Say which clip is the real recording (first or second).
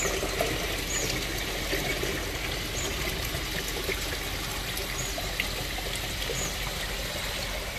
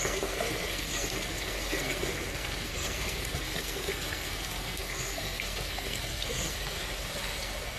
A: first